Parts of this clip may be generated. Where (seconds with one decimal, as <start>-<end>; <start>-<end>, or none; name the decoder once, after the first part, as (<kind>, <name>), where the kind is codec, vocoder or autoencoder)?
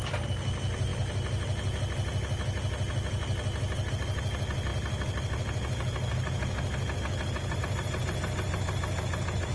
none